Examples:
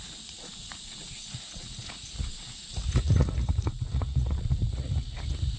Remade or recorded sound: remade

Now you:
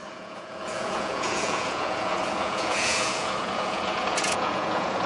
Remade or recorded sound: remade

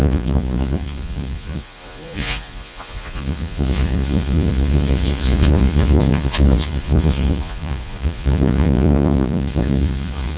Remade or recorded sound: remade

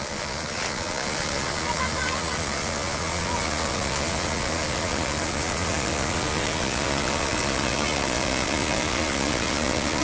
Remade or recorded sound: remade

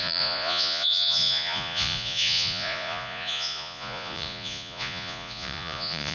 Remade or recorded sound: remade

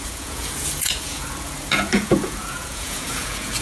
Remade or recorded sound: remade